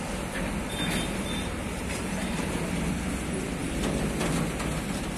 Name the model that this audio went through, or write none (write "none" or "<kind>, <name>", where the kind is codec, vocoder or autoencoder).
none